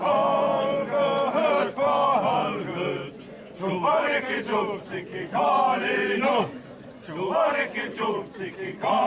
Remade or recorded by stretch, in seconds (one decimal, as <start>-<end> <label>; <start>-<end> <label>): 0.0-9.1 remade